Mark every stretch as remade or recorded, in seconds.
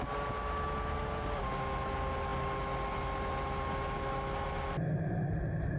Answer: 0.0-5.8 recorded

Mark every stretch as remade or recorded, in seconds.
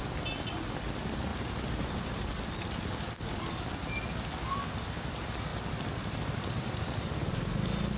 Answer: 0.0-1.3 recorded; 1.3-2.3 remade; 2.3-8.0 recorded